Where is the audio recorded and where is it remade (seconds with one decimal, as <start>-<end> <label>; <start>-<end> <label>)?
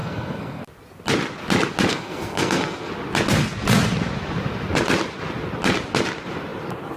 0.0-0.6 remade; 0.6-1.9 recorded; 1.9-2.9 remade; 2.9-7.0 recorded